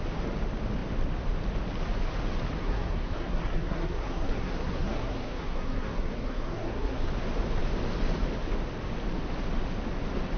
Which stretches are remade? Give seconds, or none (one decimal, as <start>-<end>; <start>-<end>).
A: 2.6-7.1